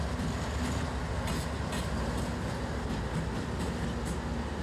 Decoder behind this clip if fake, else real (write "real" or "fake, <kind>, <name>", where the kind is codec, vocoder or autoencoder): real